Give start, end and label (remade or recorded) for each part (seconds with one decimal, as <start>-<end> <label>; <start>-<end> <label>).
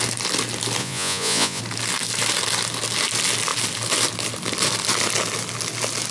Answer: 0.0-0.8 recorded; 0.8-1.6 remade; 1.6-6.1 recorded